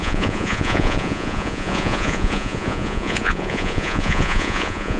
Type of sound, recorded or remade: remade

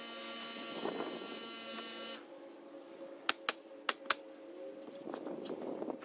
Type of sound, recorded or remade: recorded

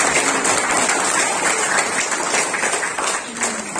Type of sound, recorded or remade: recorded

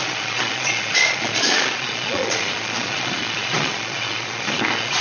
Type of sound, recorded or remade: remade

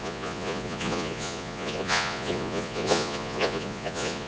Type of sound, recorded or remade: remade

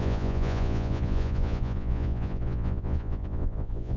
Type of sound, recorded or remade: remade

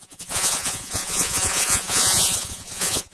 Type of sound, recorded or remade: remade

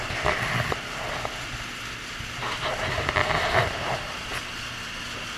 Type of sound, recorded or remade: recorded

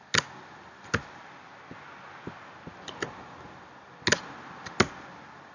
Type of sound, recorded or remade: recorded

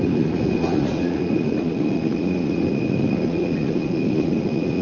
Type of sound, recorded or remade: remade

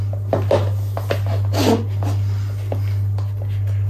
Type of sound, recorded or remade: recorded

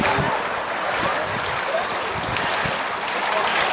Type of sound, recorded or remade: recorded